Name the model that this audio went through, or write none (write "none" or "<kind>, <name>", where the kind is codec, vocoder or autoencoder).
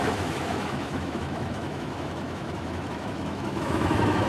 autoencoder, DAC-VAE